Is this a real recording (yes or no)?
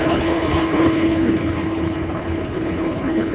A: no